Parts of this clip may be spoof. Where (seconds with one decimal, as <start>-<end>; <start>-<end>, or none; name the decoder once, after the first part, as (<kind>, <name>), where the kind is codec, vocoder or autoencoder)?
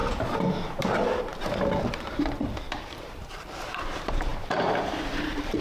0.8-5.6 (vocoder, BigVGAN v2)